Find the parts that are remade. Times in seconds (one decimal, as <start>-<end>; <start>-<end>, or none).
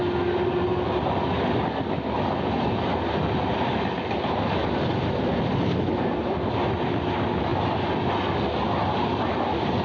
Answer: none